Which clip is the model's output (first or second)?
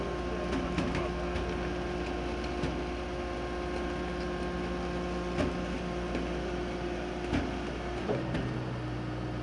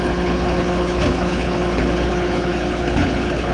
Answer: second